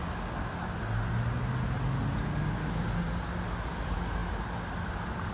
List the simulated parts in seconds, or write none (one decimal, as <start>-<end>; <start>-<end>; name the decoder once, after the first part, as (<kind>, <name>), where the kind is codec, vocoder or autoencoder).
none